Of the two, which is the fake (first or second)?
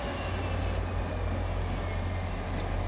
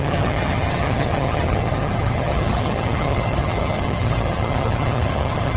second